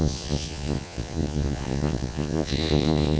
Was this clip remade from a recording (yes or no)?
yes